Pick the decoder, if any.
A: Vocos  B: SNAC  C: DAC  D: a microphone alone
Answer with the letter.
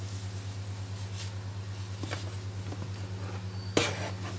D